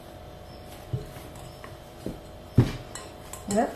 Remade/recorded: recorded